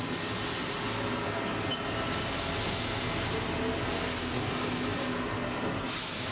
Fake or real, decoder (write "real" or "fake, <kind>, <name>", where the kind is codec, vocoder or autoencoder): real